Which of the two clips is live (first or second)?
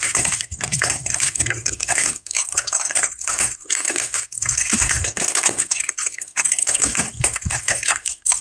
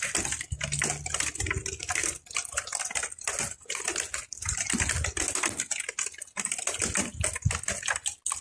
second